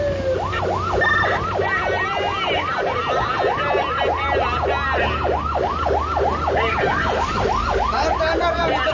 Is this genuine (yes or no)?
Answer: yes